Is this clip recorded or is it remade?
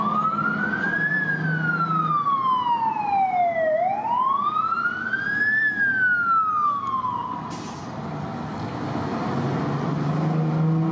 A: recorded